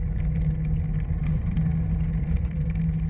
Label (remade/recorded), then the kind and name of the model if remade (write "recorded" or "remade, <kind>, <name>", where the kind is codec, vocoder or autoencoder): recorded